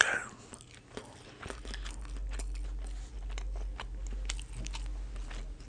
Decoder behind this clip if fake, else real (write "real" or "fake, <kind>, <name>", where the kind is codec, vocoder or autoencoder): real